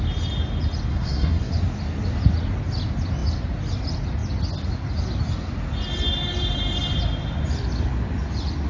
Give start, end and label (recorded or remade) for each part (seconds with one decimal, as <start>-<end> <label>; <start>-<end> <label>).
0.0-0.9 recorded; 0.9-1.5 remade; 1.5-8.7 recorded

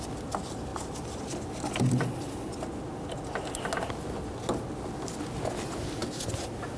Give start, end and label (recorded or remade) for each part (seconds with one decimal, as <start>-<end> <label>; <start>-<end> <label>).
0.0-6.8 recorded

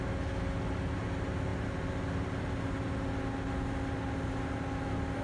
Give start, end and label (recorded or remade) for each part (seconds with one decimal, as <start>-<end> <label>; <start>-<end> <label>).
0.0-5.2 recorded

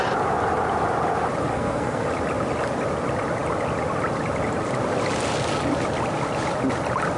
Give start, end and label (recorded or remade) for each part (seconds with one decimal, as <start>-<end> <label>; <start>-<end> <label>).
0.0-1.5 recorded; 1.5-2.1 remade; 2.1-7.2 recorded

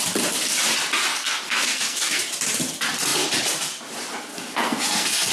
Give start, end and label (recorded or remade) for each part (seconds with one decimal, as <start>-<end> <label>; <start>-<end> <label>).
0.0-1.1 recorded; 1.1-2.2 remade; 2.2-4.3 recorded; 4.3-5.3 remade

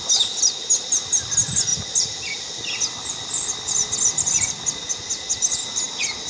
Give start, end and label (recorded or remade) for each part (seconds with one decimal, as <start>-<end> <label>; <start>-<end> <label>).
0.0-6.3 recorded

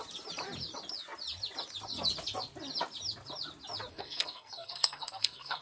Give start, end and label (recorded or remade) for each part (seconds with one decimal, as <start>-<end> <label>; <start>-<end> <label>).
0.0-3.9 recorded; 3.9-5.6 remade

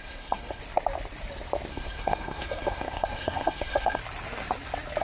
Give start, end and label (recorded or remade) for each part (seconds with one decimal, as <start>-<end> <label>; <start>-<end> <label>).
0.0-0.6 remade; 0.6-1.7 recorded; 1.7-4.0 remade; 4.0-5.0 recorded